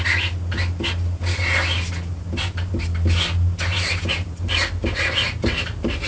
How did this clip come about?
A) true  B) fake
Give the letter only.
A